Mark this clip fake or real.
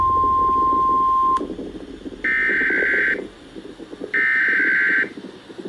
real